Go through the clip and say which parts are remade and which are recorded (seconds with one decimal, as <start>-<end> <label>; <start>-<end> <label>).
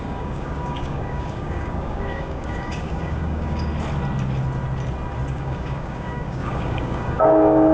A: 0.0-3.7 remade; 3.7-5.3 recorded; 5.3-7.7 remade